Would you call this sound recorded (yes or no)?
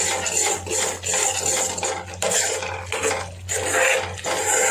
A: yes